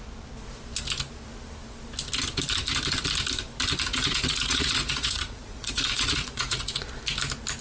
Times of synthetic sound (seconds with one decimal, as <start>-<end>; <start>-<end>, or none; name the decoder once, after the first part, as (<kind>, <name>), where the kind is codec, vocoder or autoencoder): 3.9-6.7 (vocoder, Vocos)